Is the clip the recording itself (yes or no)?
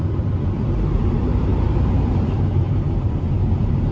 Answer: no